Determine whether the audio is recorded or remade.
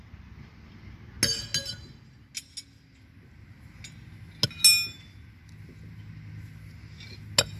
recorded